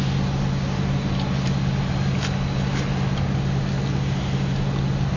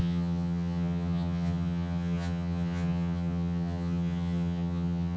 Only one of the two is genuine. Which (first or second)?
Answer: first